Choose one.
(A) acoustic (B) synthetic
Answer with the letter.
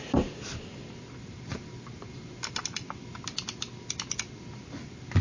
A